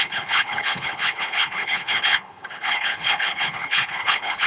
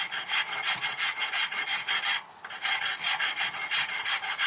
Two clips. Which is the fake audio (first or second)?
first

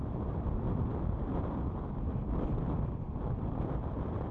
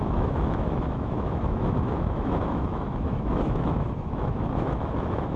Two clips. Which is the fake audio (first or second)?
second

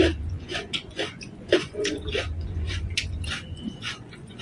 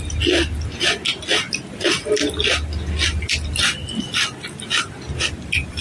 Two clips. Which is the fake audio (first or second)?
first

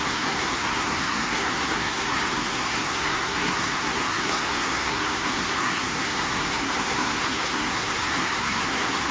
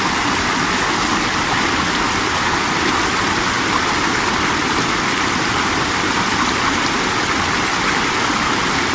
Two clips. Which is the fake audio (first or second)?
first